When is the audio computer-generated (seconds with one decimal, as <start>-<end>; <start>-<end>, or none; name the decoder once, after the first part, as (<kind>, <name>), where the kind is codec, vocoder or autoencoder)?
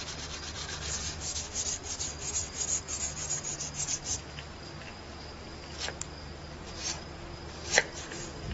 0.6-1.4 (codec, DAC)